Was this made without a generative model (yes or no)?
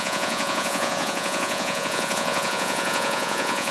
no